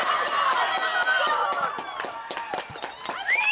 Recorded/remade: recorded